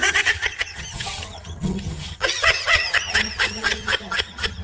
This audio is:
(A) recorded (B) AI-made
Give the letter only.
B